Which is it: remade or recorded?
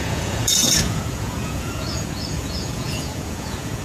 remade